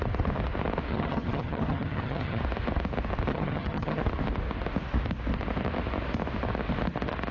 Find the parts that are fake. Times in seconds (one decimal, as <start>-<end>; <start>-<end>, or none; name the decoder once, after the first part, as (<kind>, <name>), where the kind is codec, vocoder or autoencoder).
0.9-2.4 (vocoder, HiFi-GAN); 3.3-4.0